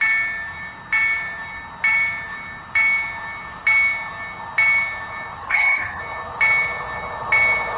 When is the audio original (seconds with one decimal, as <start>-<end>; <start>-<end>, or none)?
0.0-5.4; 6.0-7.8